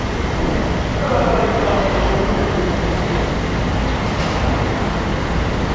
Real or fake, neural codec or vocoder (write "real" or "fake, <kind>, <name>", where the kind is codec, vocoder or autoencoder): real